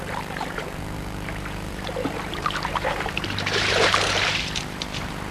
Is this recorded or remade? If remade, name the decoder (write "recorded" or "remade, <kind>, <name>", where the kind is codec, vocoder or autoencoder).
remade, vocoder, BigVGAN v2